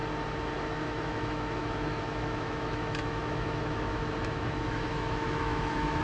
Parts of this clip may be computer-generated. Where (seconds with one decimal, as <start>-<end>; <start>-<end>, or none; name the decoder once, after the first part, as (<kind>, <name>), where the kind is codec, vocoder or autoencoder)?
0.6-6.0 (autoencoder, DAC-VAE)